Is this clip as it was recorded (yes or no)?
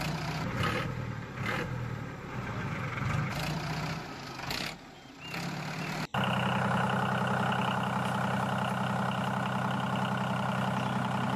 yes